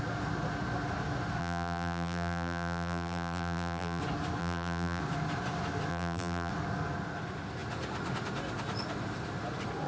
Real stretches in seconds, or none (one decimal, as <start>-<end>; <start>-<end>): 0.0-1.4; 4.0-4.4; 5.0-5.9; 6.5-9.9